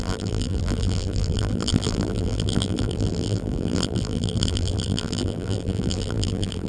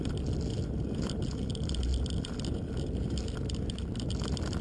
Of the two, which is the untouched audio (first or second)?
second